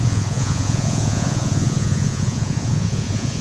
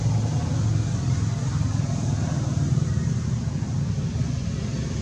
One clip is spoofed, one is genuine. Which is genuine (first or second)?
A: second